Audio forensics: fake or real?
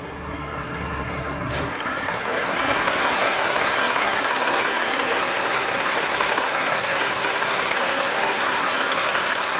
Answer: fake